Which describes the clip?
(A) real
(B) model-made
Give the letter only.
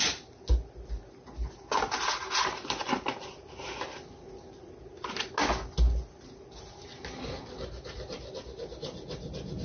A